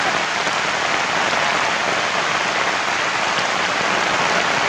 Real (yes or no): yes